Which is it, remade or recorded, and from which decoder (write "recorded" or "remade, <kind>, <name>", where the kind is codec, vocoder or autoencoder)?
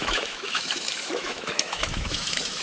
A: remade, autoencoder, DAC-VAE